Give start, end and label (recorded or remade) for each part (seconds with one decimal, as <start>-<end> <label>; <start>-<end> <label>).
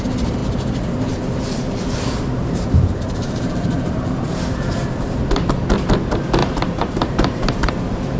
0.0-2.3 recorded; 2.3-4.7 remade; 4.7-6.4 recorded; 6.4-7.7 remade; 7.7-8.2 recorded